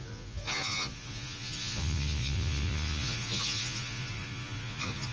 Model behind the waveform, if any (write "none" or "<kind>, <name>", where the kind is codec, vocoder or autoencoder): vocoder, Vocos